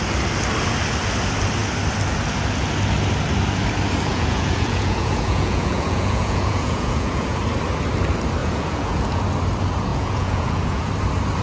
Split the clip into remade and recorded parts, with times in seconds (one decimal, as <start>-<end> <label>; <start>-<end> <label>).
0.0-4.1 recorded; 4.1-7.4 remade; 7.4-8.4 recorded; 8.4-9.2 remade; 9.2-9.9 recorded; 9.9-10.9 remade; 10.9-11.4 recorded